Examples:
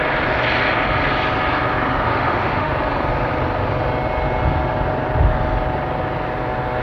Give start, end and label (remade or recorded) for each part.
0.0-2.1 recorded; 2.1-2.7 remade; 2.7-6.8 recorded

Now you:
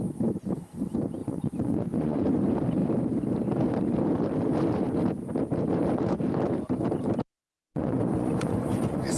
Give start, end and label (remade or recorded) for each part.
0.0-1.2 recorded; 1.2-2.2 remade; 2.2-7.3 recorded; 7.3-9.2 remade

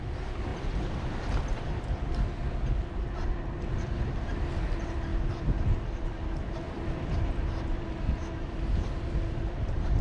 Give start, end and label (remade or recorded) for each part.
0.0-10.0 recorded

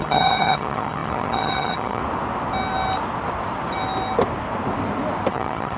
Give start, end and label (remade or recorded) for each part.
0.0-2.0 remade; 2.0-5.3 recorded; 5.3-5.8 remade

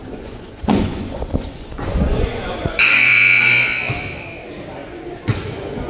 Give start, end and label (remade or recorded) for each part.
0.0-3.5 remade; 3.5-4.8 recorded; 4.8-5.9 remade

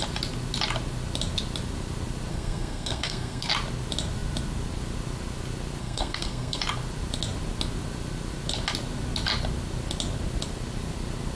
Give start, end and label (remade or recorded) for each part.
0.0-2.3 recorded; 2.3-3.5 remade; 3.5-5.8 recorded; 5.8-6.6 remade; 6.6-11.3 recorded

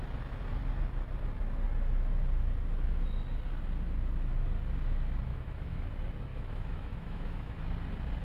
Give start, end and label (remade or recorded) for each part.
0.0-5.3 recorded; 5.3-5.8 remade; 5.8-6.3 recorded; 6.3-7.6 remade; 7.6-8.2 recorded